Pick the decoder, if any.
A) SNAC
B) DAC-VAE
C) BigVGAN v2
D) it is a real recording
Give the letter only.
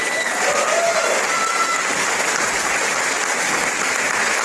D